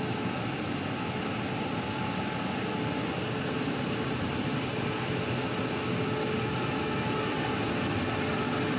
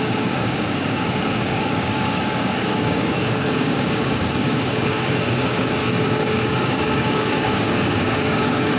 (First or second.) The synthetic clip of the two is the second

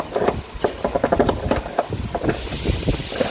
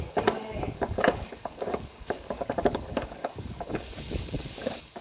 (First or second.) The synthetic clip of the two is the second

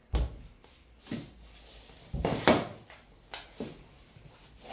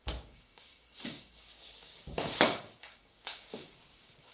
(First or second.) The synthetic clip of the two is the second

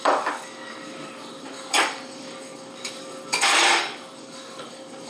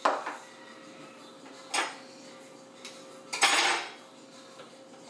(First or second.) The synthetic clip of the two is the first